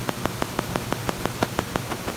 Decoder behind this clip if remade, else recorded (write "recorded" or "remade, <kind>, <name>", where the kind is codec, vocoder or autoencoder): recorded